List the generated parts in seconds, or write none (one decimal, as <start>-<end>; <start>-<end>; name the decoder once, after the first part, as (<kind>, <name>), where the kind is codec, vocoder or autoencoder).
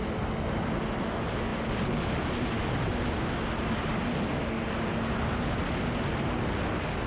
none